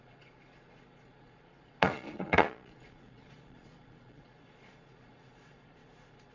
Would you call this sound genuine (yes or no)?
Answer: no